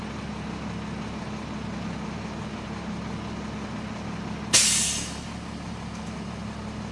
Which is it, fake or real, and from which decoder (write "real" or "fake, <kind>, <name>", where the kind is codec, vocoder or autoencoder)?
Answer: real